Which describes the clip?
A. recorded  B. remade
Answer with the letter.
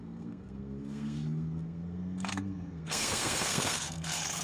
B